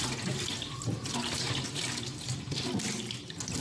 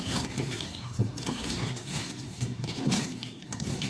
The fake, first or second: second